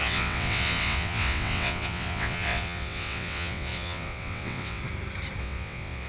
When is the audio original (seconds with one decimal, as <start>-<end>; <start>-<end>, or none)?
4.8-5.4